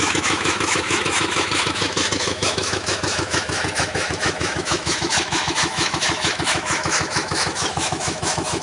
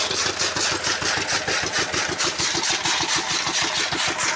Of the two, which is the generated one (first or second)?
first